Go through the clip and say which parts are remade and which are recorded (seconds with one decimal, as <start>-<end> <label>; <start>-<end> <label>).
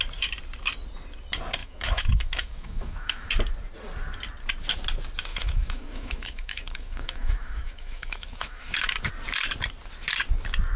0.0-1.6 recorded; 1.6-3.3 remade; 3.3-5.3 recorded; 5.3-9.1 remade; 9.1-10.8 recorded